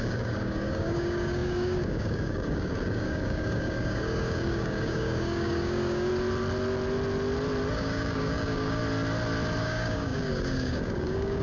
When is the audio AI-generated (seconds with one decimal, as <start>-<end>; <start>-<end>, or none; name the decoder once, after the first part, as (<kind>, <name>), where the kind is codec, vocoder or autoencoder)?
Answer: 0.0-6.1 (codec, DAC); 7.7-8.8; 9.6-11.4